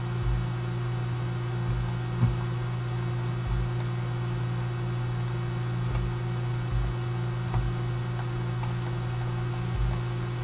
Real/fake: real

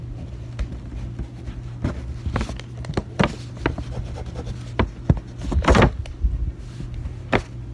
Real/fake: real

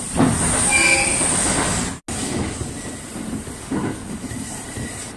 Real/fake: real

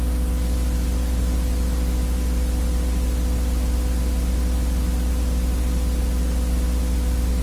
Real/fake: real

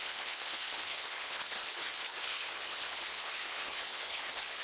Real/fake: fake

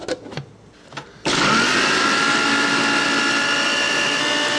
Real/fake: real